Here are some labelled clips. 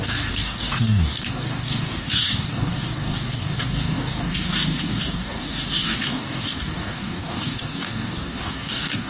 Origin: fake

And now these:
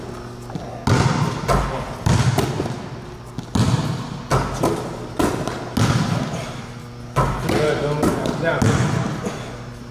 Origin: real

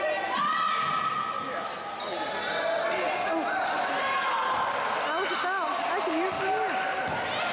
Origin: real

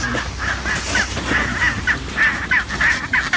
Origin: real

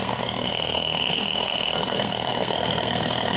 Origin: fake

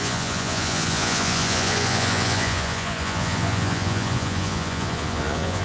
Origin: fake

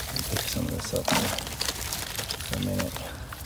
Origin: real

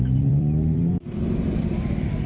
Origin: fake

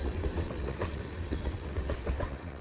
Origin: fake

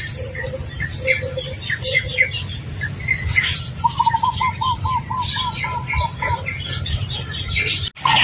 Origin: real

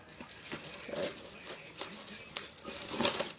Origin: real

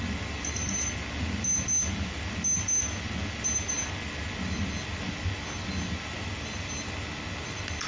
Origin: real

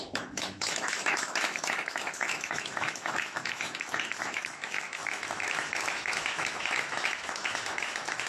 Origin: fake